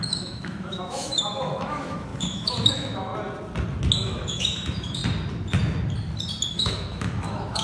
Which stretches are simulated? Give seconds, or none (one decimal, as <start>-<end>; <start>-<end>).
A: 0.0-3.1; 4.0-5.0; 6.5-7.6